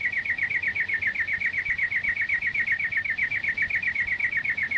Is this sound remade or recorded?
recorded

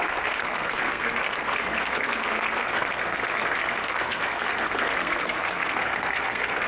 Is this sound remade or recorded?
remade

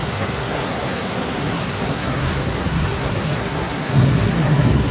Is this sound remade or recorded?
remade